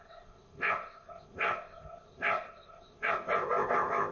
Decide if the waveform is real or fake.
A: fake